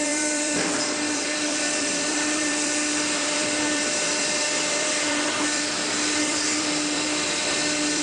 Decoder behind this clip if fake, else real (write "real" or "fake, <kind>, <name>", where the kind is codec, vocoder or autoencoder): fake, vocoder, BigVGAN v2